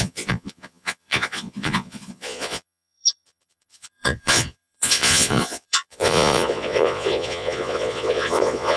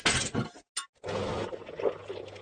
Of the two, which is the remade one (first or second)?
first